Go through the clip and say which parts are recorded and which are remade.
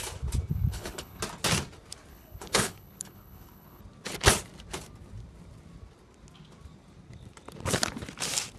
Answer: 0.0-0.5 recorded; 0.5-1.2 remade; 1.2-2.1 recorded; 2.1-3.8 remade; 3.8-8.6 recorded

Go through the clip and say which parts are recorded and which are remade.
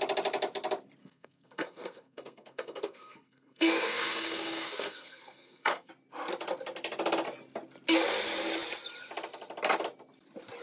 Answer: 0.0-1.0 recorded; 1.0-5.9 remade; 5.9-10.6 recorded